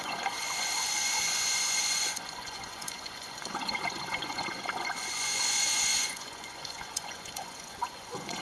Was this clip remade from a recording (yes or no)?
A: yes